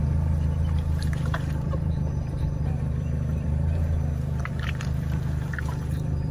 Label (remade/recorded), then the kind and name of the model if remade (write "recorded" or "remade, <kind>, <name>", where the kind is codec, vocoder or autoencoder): remade, vocoder, BigVGAN v2